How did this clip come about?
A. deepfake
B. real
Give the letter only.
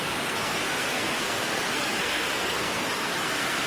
A